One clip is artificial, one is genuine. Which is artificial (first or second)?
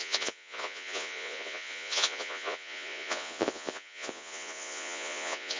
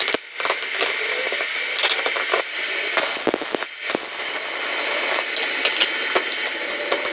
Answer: first